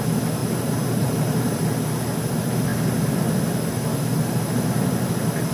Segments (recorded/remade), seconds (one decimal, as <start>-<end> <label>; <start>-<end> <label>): 0.0-0.4 recorded; 0.4-1.6 remade; 1.6-5.5 recorded